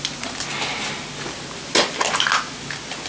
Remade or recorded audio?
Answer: recorded